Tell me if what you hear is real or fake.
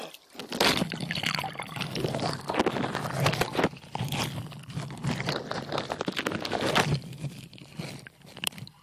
real